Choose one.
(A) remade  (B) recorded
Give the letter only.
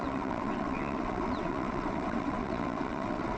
A